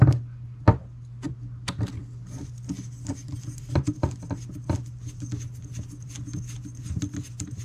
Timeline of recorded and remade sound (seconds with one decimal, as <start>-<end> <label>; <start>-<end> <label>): 0.0-7.6 recorded